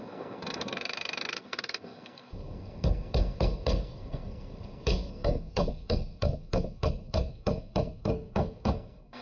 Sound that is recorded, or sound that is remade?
remade